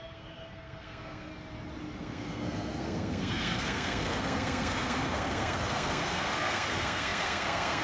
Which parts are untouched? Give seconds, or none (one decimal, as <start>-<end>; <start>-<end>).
1.3-2.0